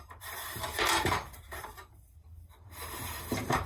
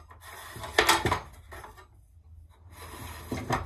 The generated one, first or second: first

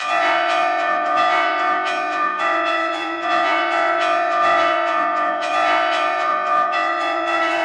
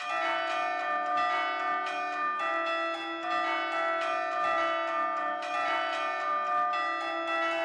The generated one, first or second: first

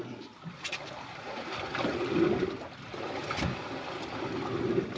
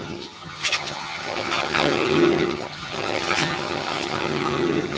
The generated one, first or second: second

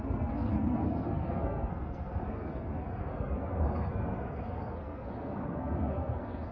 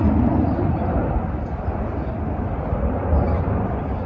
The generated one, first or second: first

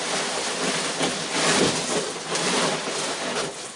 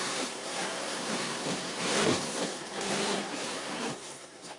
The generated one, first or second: second